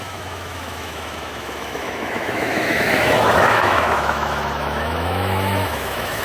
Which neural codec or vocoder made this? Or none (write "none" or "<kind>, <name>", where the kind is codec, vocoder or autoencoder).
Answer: autoencoder, DAC-VAE